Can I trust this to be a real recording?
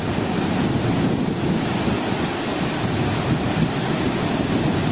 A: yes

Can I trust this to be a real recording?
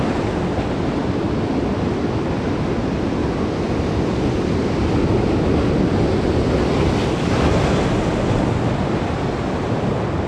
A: yes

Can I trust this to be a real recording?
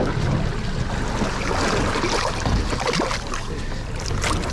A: yes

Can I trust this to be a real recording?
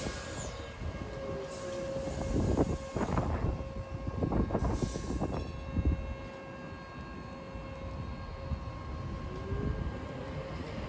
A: yes